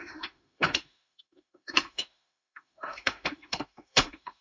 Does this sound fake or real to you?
fake